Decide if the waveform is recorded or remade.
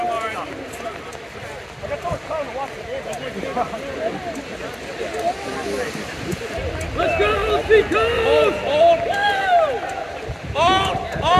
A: recorded